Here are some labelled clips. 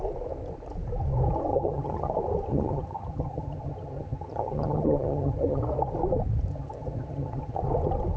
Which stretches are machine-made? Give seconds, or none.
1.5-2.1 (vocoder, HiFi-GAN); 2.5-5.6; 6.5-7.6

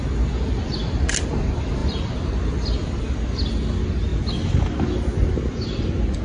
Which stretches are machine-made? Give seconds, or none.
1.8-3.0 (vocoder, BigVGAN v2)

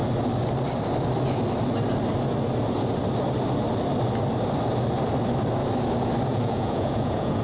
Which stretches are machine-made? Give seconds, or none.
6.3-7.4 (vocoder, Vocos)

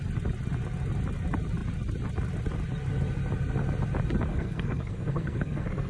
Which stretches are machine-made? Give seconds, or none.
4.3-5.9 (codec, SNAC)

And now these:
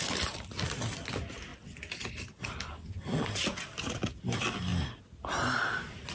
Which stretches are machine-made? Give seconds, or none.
none

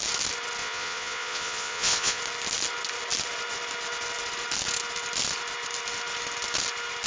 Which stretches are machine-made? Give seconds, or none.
0.6-2.2 (vocoder, Vocos)

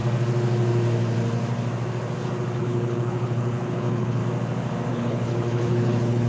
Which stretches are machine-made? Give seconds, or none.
2.6-4.2 (codec, HILCodec); 4.9-6.3

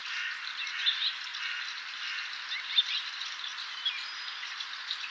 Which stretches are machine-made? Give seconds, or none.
0.8-1.3 (vocoder, BigVGAN v2); 3.0-3.5